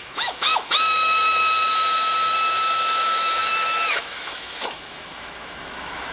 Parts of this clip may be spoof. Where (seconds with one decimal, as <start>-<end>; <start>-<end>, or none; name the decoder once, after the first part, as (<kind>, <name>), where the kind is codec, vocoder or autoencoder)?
0.0-6.1 (autoencoder, DAC-VAE)